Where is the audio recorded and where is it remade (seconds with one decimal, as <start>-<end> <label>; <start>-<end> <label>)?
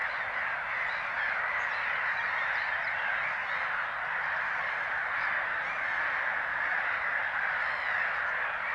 0.0-8.7 recorded